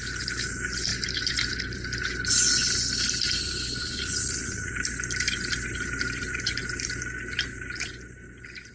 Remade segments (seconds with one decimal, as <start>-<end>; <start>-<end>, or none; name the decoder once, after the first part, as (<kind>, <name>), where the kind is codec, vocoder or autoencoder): 3.8-4.7 (vocoder, Vocos)